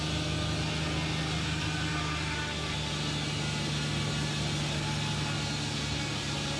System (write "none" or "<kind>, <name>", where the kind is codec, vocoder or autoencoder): none